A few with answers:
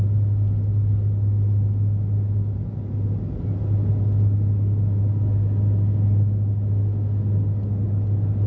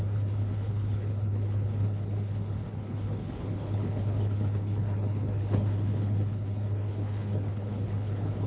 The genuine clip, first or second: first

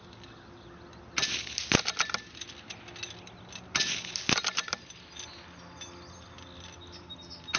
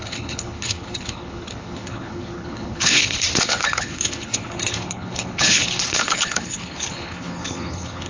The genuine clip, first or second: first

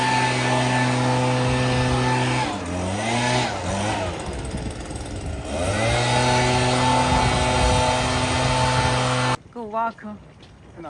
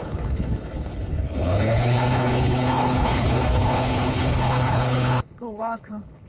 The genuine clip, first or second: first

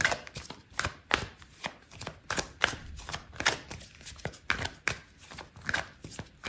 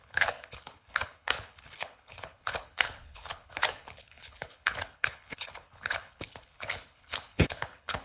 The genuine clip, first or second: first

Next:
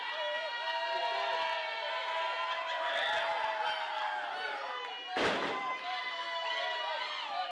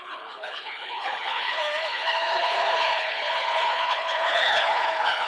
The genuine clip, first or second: first